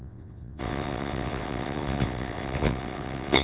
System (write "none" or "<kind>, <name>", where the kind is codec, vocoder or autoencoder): vocoder, WaveNeXt